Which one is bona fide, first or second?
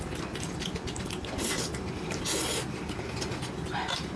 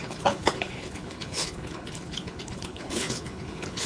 first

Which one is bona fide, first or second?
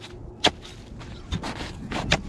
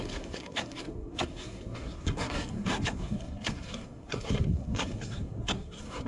first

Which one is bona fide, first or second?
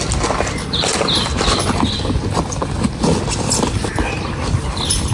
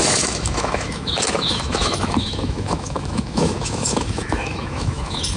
first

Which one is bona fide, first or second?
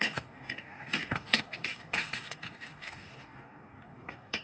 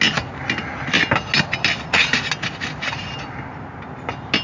second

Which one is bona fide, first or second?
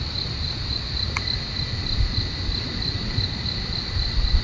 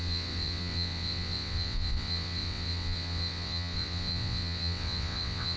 first